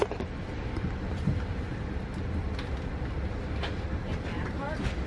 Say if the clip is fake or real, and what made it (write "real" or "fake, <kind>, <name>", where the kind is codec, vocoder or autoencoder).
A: real